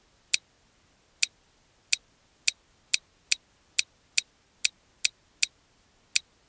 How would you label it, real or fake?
real